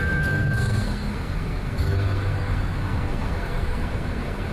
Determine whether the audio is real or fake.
fake